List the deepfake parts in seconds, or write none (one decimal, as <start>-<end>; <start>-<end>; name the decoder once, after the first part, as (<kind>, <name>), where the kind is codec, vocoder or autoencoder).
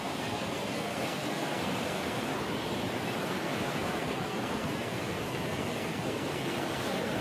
0.0-2.3 (codec, SNAC); 3.2-7.2